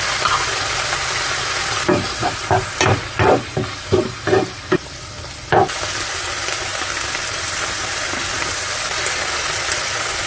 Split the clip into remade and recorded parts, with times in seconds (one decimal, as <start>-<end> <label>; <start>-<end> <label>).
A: 0.0-6.7 remade; 6.7-9.0 recorded; 9.0-10.3 remade